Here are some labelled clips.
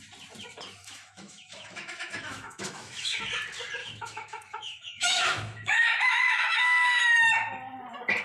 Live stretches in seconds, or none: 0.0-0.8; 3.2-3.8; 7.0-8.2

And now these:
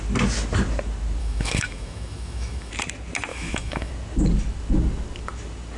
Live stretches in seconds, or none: 0.0-1.2; 2.7-3.3; 3.9-5.8

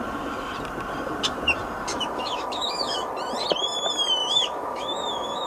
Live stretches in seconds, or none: 0.0-1.9; 3.1-4.2